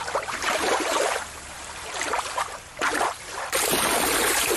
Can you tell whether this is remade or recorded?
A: remade